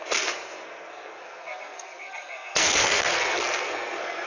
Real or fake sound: fake